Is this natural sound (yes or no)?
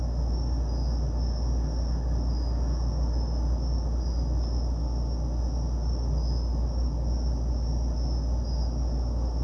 yes